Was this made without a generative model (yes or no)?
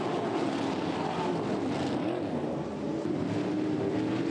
yes